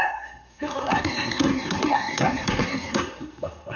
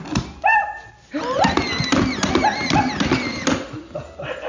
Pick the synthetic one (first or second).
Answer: first